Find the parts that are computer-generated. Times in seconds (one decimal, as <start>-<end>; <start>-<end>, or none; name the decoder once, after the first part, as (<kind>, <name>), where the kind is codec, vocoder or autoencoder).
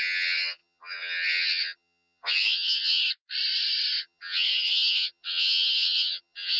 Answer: 0.0-3.0 (vocoder, HiFi-GAN); 4.0-6.6